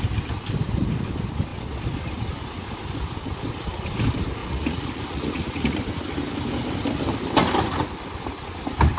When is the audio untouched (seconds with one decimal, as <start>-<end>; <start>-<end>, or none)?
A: 0.0-4.4; 5.8-9.0